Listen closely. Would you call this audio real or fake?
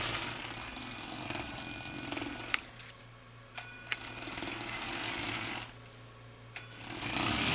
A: real